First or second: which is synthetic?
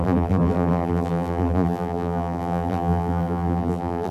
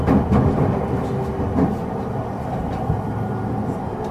first